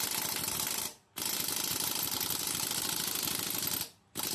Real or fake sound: real